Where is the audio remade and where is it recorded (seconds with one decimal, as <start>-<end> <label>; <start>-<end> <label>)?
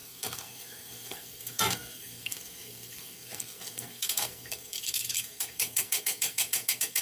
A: 0.0-7.0 remade